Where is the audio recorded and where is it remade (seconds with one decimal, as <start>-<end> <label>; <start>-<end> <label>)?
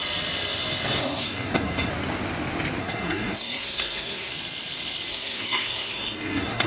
0.0-1.0 recorded; 1.0-1.9 remade; 1.9-2.8 recorded; 2.8-4.3 remade; 4.3-5.1 recorded; 5.1-6.7 remade